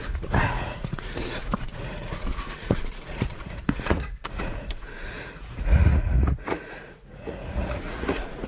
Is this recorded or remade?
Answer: remade